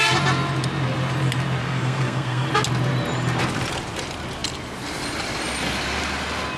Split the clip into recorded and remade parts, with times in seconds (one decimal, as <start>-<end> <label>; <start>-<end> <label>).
0.0-1.6 recorded; 1.6-2.5 remade; 2.5-6.6 recorded